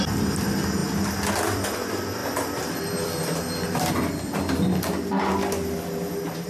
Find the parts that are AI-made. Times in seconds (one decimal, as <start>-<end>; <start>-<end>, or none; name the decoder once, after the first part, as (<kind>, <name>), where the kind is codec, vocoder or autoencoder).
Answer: 2.2-3.9 (vocoder, BigVGAN v2)